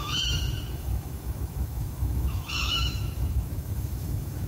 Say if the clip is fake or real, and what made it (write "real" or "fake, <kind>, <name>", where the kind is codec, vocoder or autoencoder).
fake, autoencoder, DAC-VAE